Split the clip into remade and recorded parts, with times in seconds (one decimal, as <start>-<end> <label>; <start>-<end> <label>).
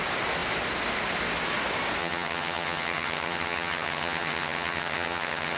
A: 0.0-2.0 recorded; 2.0-5.6 remade